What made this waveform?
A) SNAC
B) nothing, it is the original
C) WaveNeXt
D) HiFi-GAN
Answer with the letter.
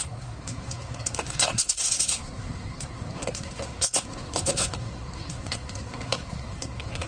A